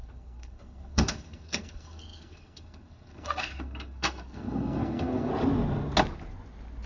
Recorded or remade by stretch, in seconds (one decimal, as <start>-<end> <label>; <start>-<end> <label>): 0.0-5.3 remade; 5.3-6.9 recorded

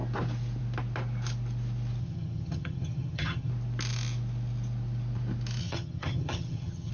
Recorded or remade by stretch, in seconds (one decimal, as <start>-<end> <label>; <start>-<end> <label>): 0.0-2.0 recorded; 2.0-3.5 remade; 3.5-5.6 recorded; 5.6-6.9 remade

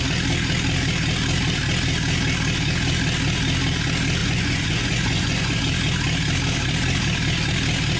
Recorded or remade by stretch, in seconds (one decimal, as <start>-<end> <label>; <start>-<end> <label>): 0.0-4.2 recorded; 4.2-5.6 remade; 5.6-8.0 recorded